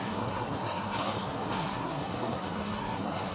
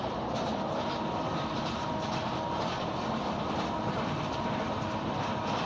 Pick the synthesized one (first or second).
first